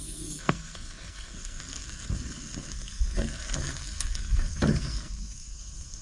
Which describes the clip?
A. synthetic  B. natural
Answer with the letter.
A